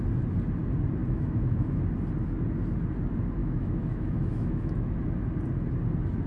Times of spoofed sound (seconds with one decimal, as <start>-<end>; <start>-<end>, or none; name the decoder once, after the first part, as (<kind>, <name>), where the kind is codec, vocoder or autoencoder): 1.0-1.8 (autoencoder, DAC-VAE); 3.4-4.9